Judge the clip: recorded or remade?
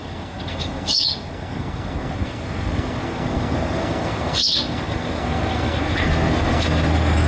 remade